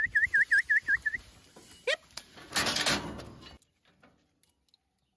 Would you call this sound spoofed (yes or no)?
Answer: no